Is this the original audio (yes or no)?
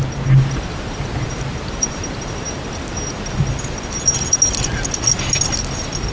yes